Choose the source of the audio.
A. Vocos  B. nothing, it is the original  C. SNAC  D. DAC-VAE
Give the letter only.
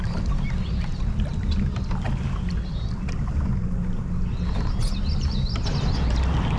B